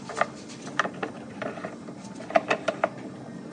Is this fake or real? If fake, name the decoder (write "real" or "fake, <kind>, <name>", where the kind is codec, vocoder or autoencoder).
real